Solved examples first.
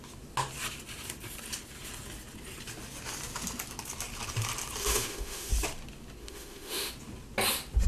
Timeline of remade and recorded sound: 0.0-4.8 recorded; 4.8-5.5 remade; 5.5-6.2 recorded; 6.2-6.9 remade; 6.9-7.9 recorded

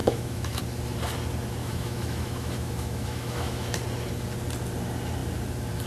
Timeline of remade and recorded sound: 0.0-0.6 remade; 0.6-1.6 recorded; 1.6-3.8 remade; 3.8-5.9 recorded